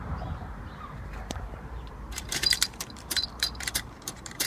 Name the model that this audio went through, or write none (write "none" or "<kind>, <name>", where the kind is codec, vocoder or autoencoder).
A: vocoder, BigVGAN v2